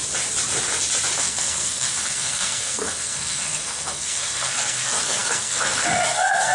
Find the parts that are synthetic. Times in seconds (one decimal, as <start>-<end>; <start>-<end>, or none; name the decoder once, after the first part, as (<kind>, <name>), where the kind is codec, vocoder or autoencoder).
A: 1.2-6.5 (codec, SNAC)